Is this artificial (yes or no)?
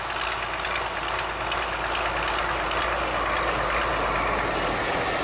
no